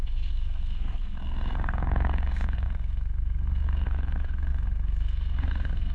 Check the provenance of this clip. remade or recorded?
remade